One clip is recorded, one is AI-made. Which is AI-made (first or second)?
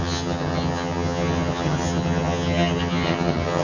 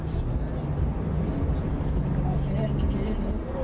first